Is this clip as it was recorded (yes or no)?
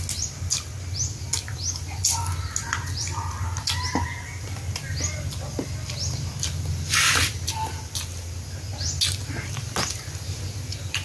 yes